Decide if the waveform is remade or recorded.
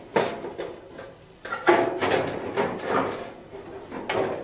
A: recorded